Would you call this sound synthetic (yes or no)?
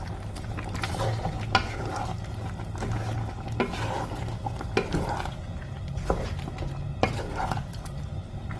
no